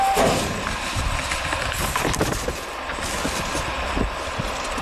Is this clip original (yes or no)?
yes